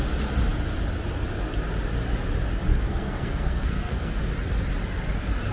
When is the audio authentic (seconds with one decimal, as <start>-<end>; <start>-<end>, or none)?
0.0-2.7; 4.2-5.5

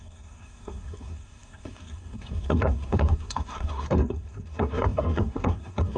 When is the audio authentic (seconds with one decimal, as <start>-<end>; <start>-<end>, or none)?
none